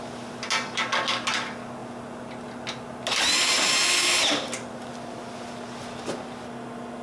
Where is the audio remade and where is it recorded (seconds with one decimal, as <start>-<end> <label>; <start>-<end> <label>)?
0.0-7.0 recorded